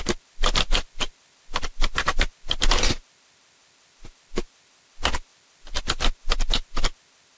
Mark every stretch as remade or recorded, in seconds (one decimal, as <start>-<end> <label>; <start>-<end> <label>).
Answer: 0.0-7.4 recorded